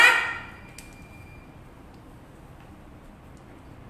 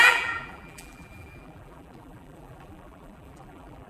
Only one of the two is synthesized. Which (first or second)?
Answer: second